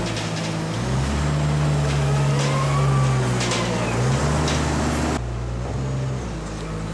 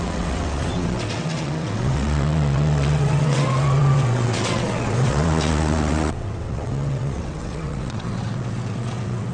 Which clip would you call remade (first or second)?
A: second